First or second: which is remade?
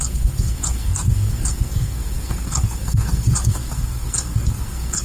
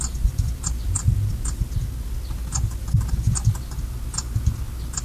first